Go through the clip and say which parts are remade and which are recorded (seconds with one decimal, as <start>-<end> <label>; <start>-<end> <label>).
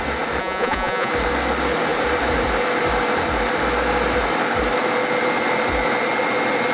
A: 0.0-0.4 recorded; 0.4-1.1 remade; 1.1-6.7 recorded